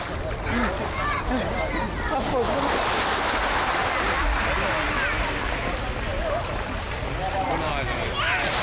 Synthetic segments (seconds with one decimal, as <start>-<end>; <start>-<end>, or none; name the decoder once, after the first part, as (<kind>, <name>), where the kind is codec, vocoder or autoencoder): 6.1-7.7 (vocoder, BigVGAN v2)